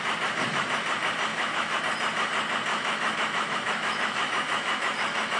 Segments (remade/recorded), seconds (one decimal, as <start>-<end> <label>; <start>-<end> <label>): 0.0-1.3 recorded; 1.3-1.8 remade; 1.8-2.7 recorded; 2.7-5.4 remade